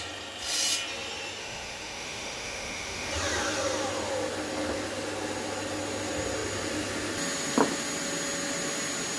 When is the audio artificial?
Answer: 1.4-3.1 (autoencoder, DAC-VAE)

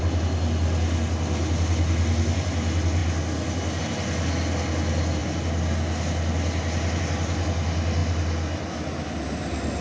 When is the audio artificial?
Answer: none

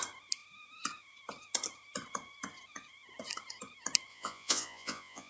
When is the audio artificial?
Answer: 4.1-5.3 (vocoder, Vocos)

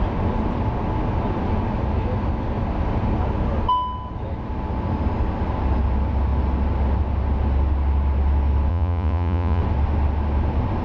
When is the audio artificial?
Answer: 8.7-9.6 (vocoder, Vocos)